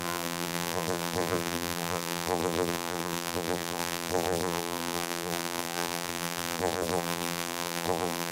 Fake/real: fake